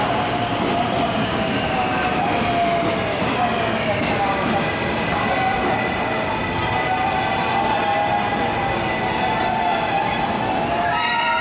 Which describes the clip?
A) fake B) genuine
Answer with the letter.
B